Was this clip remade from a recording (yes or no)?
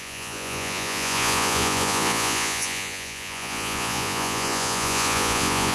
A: yes